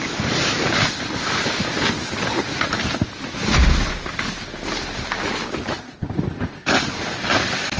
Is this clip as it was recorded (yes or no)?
yes